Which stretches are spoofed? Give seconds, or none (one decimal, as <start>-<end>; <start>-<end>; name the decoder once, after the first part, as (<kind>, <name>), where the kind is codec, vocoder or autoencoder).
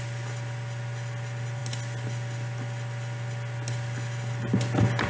none